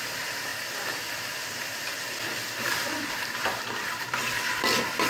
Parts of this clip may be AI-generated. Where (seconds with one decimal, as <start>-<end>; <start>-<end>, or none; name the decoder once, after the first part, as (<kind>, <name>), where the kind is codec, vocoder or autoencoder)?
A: 0.5-3.6 (vocoder, BigVGAN v2)